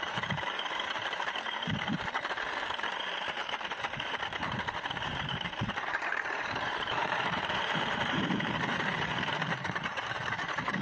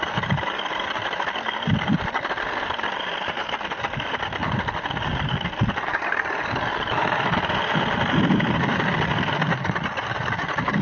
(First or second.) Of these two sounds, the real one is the second